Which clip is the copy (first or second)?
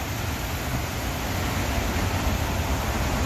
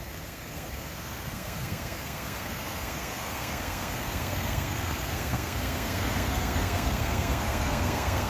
second